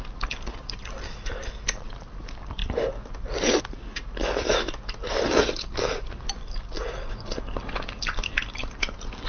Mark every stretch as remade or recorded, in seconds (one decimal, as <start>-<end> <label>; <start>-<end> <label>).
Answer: 0.0-9.3 recorded